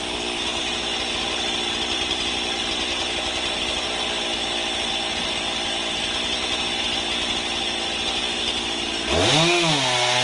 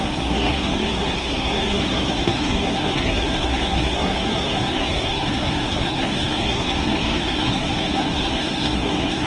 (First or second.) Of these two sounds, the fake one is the second